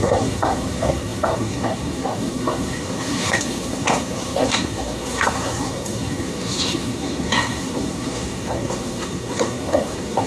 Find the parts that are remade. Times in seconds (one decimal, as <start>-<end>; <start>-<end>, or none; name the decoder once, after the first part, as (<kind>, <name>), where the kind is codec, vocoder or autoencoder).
0.0-10.3 (codec, SNAC)